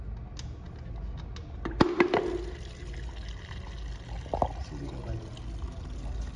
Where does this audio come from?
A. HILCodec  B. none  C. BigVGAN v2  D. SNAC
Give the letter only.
B